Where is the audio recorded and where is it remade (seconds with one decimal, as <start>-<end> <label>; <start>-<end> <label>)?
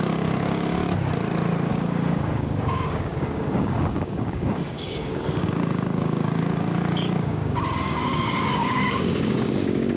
0.0-0.8 remade; 0.8-1.7 recorded; 1.7-10.0 remade